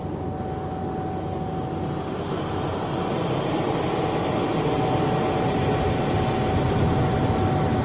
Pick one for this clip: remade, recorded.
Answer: recorded